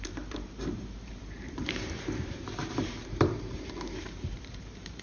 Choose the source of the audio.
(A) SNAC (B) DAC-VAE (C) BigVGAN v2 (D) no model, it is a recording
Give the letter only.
C